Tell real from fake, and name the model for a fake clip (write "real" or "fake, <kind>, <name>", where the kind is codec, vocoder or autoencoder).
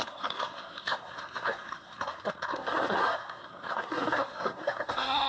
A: fake, codec, SNAC